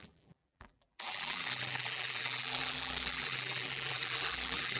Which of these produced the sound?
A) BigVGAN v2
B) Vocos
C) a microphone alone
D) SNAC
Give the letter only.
A